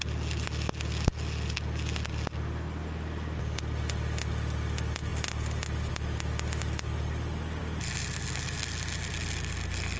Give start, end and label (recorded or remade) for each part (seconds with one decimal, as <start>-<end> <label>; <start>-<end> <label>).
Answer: 0.0-10.0 recorded